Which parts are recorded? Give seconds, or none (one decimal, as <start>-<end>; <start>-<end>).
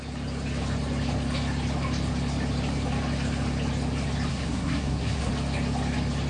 0.0-4.3; 5.3-6.3